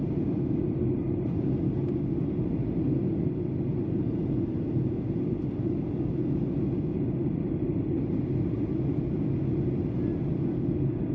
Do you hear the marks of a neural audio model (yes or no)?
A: no